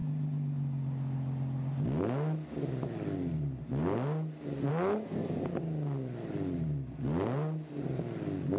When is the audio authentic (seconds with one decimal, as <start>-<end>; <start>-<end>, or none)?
0.0-8.6